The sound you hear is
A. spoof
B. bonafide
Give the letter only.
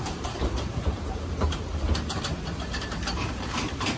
A